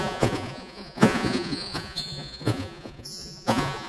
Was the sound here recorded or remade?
remade